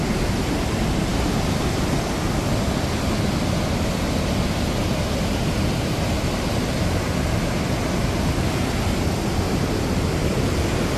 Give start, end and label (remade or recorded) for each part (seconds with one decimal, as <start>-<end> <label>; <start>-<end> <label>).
0.0-11.0 recorded

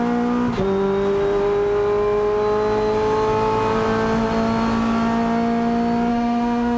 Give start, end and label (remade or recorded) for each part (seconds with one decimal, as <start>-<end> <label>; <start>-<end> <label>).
0.0-6.1 recorded; 6.1-6.8 remade